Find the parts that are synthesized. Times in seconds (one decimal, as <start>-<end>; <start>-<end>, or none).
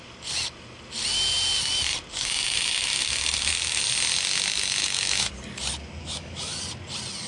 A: 2.1-3.8; 4.8-5.3; 6.0-6.6